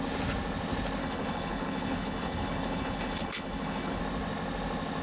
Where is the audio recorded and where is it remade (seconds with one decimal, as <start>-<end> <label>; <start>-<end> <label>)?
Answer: 0.0-1.0 recorded; 1.0-4.0 remade; 4.0-5.0 recorded

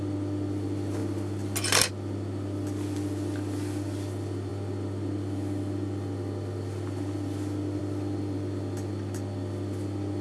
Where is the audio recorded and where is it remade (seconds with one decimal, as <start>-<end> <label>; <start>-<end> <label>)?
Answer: 0.0-10.2 recorded

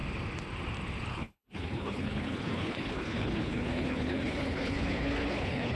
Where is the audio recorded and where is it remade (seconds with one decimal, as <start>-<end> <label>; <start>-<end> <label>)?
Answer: 0.0-1.1 recorded; 1.1-5.8 remade